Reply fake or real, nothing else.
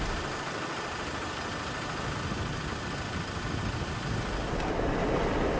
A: real